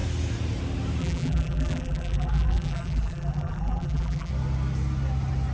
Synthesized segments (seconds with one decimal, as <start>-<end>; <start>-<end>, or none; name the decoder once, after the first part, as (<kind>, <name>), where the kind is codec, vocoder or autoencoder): 1.0-4.3 (vocoder, BigVGAN v2)